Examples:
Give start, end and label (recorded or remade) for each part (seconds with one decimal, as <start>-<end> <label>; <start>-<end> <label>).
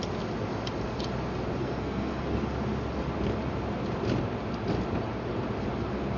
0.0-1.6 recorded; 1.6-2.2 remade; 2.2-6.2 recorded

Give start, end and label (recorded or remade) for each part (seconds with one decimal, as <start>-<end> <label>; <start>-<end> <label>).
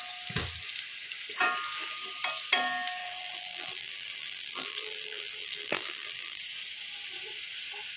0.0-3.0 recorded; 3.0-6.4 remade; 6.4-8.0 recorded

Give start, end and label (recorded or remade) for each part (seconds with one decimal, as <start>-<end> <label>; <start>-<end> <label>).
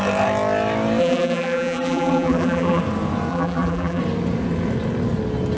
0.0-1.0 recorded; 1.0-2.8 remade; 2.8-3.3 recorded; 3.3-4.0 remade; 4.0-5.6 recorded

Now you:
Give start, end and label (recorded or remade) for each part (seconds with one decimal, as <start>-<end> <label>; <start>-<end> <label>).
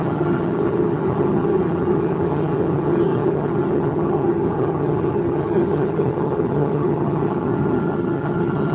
0.0-8.7 remade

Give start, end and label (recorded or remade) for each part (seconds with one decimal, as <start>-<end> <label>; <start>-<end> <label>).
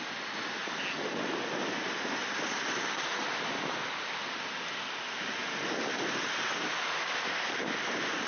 0.0-8.3 recorded